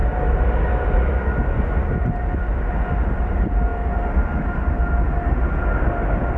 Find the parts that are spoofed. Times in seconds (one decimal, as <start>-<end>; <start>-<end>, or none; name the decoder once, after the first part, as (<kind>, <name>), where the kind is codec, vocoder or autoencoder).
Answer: none